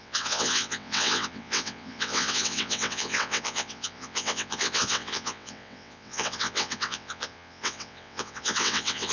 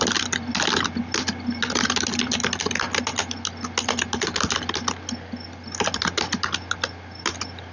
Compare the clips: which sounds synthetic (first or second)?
first